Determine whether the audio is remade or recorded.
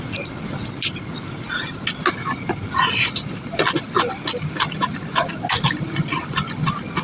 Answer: recorded